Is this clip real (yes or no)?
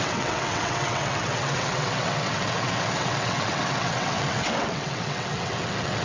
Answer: no